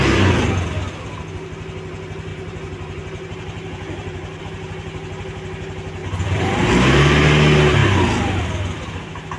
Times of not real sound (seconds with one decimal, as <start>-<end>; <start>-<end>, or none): 2.3-4.4